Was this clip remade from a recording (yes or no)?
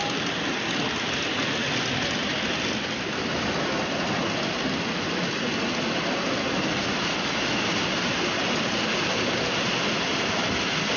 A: no